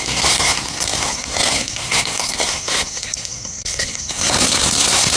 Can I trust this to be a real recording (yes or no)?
no